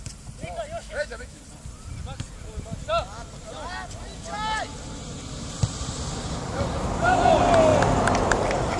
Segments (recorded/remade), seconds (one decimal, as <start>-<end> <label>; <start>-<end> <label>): 0.0-0.8 recorded; 0.8-1.4 remade; 1.4-8.8 recorded